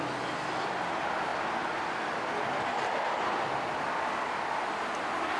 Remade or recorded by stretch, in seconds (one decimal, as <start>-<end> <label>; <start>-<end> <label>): 0.0-5.4 recorded